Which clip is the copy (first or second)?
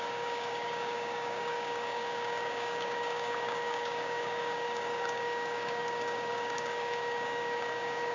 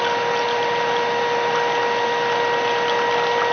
first